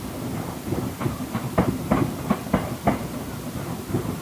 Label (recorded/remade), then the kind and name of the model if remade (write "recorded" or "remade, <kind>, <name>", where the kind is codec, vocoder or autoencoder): recorded